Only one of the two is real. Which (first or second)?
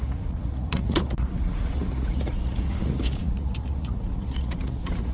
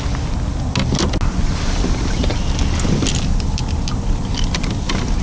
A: second